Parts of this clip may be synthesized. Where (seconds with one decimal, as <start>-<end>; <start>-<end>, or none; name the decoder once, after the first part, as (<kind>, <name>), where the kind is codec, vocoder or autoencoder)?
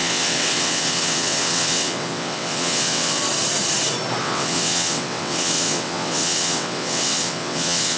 0.0-3.2 (vocoder, WaveNeXt); 4.2-8.0